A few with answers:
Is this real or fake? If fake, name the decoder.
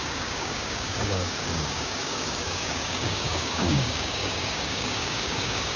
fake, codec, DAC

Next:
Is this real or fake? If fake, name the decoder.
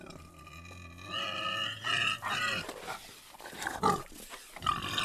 real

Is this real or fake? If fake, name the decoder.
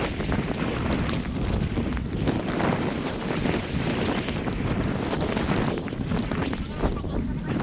real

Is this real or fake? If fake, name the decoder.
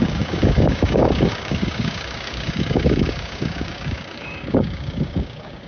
fake, codec, DAC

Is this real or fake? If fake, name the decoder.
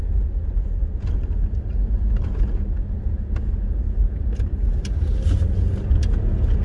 real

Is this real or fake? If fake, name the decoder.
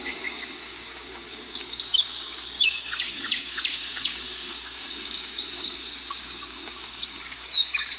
fake, codec, DAC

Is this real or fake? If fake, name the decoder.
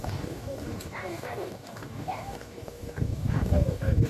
fake, codec, DAC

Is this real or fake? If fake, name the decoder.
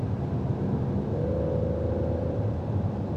real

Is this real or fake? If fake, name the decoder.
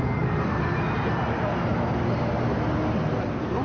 real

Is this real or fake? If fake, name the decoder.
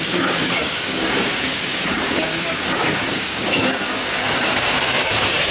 fake, codec, DAC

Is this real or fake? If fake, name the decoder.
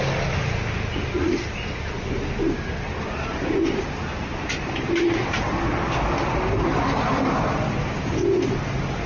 real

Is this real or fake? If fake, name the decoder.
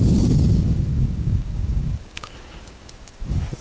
fake, codec, DAC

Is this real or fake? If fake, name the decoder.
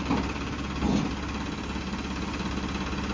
real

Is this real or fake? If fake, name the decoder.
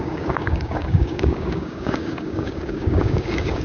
fake, codec, DAC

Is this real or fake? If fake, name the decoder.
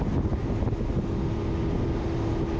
real